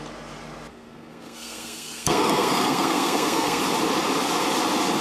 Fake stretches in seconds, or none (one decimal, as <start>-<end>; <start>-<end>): 0.7-3.6